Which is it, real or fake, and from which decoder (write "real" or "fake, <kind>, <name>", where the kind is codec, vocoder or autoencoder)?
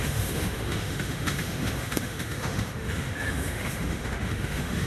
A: fake, autoencoder, DAC-VAE